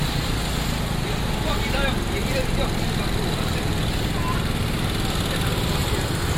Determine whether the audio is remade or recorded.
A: recorded